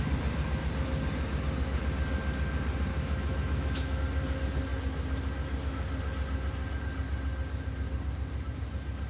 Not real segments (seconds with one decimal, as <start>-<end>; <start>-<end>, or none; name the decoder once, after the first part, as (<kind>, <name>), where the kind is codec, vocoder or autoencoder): 2.9-4.0 (autoencoder, DAC-VAE)